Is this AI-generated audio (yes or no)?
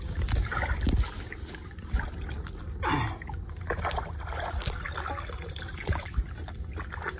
no